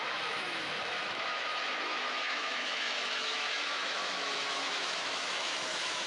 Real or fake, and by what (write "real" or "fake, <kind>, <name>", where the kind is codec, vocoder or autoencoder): fake, autoencoder, DAC-VAE